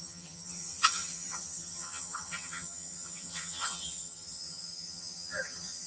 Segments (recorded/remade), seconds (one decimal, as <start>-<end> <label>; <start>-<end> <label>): 0.0-5.9 remade